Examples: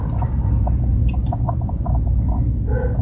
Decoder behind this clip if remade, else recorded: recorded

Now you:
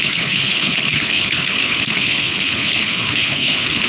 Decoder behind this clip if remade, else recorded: remade, codec, HILCodec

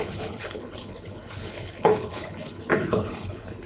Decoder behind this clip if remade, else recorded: remade, codec, HILCodec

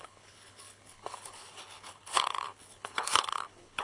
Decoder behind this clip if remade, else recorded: remade, codec, HILCodec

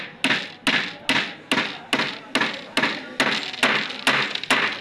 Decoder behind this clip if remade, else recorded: recorded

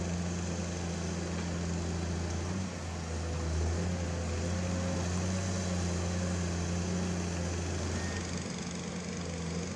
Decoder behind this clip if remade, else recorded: recorded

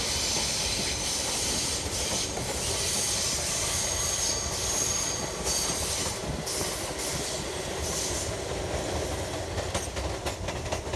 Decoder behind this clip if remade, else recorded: recorded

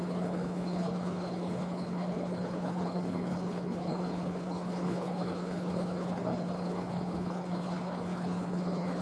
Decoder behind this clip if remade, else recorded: remade, codec, HILCodec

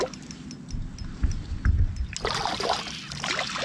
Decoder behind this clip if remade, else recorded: recorded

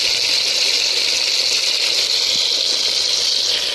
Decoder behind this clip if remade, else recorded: recorded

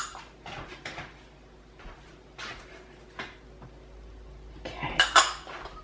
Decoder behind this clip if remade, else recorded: recorded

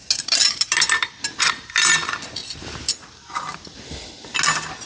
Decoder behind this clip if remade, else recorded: recorded